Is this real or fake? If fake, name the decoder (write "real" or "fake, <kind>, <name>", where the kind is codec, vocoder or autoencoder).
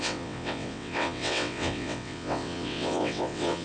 fake, vocoder, WaveNeXt